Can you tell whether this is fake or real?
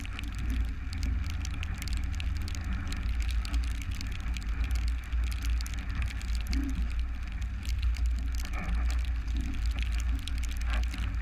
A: real